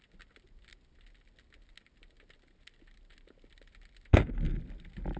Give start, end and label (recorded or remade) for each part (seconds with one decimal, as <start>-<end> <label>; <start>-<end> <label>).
0.0-4.1 recorded; 4.1-4.6 remade; 4.6-5.2 recorded